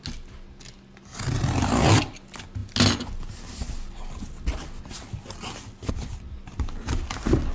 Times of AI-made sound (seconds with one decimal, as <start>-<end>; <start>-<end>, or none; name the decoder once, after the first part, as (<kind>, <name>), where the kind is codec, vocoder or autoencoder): none